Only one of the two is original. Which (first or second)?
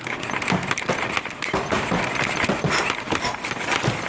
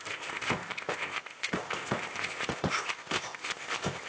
first